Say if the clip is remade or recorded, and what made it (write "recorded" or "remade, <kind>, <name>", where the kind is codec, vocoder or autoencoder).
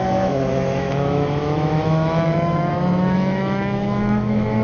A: remade, autoencoder, DAC-VAE